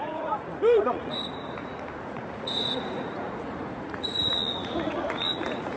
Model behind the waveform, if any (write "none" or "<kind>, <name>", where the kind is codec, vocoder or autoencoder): vocoder, Vocos